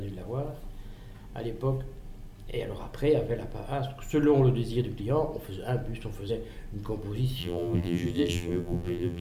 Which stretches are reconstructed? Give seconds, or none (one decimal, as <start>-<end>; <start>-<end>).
7.4-9.2

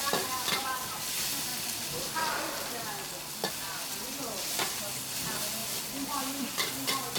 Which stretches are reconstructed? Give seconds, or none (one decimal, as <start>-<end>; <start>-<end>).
none